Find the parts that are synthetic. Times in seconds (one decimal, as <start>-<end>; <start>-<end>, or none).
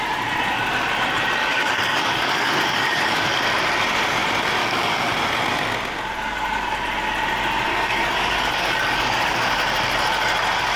1.4-3.3; 4.6-5.1; 7.7-9.6